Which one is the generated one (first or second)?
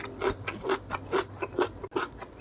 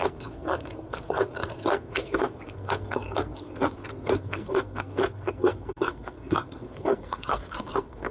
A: second